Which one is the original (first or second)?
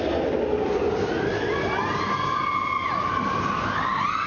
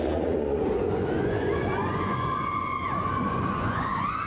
first